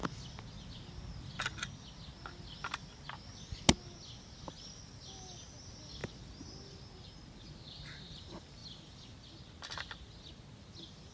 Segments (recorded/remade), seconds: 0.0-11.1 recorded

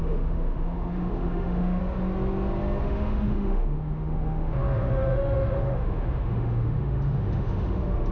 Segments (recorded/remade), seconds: 0.0-1.8 remade; 1.8-2.8 recorded; 2.8-8.1 remade

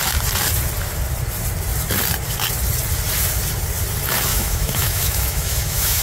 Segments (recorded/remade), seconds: 0.0-4.3 recorded; 4.3-6.0 remade

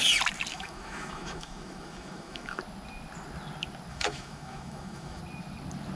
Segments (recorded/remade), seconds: 0.0-0.5 recorded; 0.5-2.6 remade; 2.6-3.9 recorded; 3.9-5.2 remade; 5.2-6.0 recorded

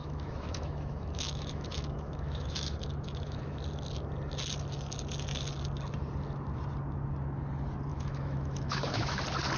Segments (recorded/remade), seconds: 0.0-3.6 remade; 3.6-7.9 recorded; 7.9-9.2 remade; 9.2-9.6 recorded

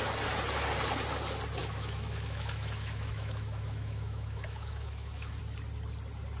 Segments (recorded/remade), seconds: 0.0-1.6 recorded; 1.6-5.4 remade; 5.4-6.4 recorded

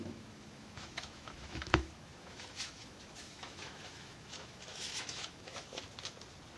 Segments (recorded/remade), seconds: 0.0-5.7 remade; 5.7-6.6 recorded

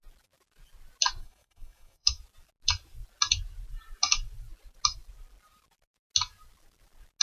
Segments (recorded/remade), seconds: 0.0-1.2 recorded; 1.2-2.2 remade; 2.2-7.2 recorded